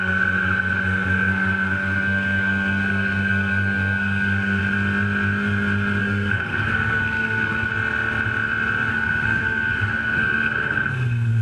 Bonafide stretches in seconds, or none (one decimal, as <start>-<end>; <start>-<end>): 4.6-6.0; 7.7-8.9